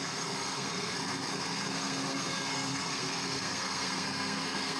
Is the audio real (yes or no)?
no